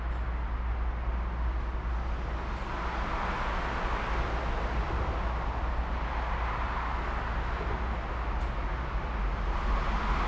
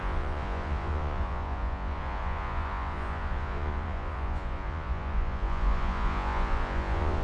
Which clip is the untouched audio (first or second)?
first